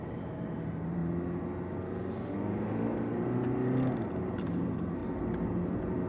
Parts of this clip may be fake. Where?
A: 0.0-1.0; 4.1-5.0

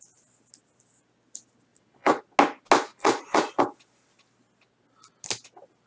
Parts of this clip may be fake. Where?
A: 1.7-2.2; 2.9-3.6

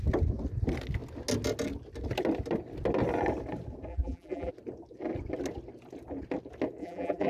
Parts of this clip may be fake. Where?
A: 3.9-4.5; 6.8-7.3

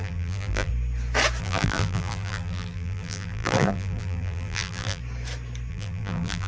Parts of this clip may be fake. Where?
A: 0.0-0.7; 1.4-5.0; 5.7-6.5